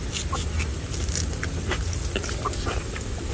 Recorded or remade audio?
recorded